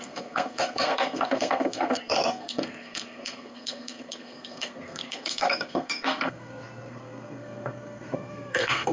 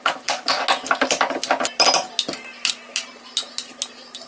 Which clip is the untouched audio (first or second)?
second